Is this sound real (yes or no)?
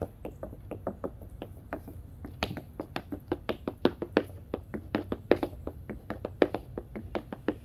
yes